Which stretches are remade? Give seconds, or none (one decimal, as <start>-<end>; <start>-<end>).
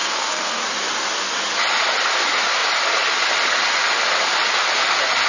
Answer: 0.0-0.6